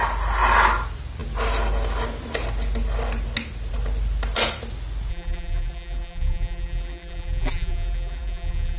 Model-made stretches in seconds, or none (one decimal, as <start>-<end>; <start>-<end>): 5.1-8.8